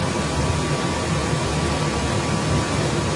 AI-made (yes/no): no